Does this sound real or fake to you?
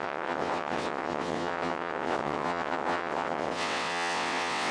fake